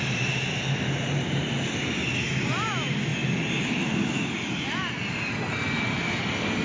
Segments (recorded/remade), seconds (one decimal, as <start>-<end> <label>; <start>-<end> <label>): 0.0-6.6 recorded